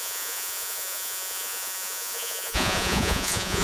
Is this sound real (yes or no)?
no